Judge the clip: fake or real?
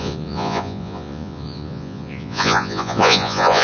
fake